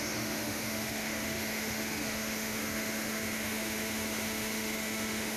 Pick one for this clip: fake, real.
fake